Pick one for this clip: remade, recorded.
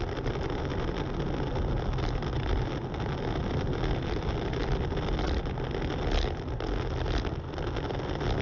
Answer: recorded